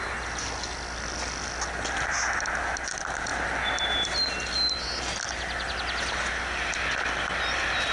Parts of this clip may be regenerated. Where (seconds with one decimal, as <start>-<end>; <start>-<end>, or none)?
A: none